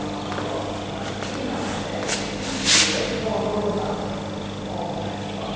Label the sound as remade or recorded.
recorded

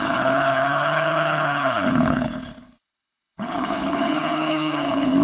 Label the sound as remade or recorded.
remade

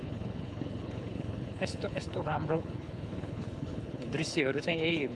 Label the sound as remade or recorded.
remade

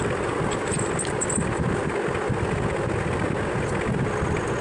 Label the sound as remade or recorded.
recorded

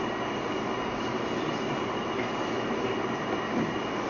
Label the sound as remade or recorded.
recorded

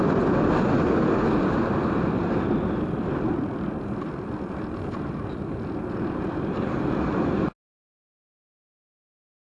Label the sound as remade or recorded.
recorded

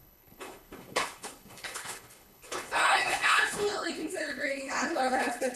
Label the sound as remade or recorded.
remade